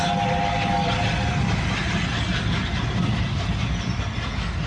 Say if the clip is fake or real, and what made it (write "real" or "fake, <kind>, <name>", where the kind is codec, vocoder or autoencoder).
real